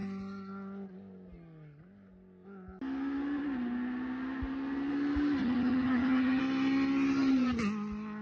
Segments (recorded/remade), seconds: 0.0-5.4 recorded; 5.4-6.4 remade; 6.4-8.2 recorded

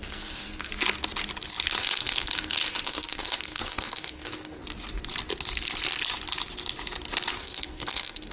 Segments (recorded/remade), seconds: 0.0-0.7 remade; 0.7-1.8 recorded; 1.8-4.6 remade; 4.6-7.4 recorded; 7.4-8.3 remade

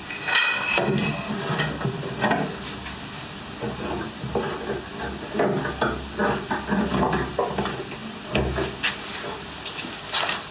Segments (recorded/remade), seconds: 0.0-10.5 recorded

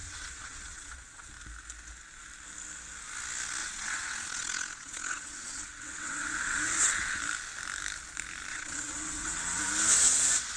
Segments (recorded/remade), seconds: 0.0-1.3 remade; 1.3-3.6 recorded; 3.6-7.2 remade; 7.2-8.5 recorded; 8.5-9.6 remade; 9.6-10.6 recorded

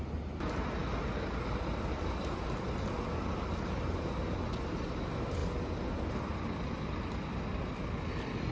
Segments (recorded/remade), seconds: 0.0-8.5 recorded

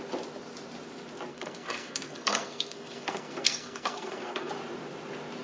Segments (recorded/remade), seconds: 0.0-1.3 recorded; 1.3-4.5 remade; 4.5-5.4 recorded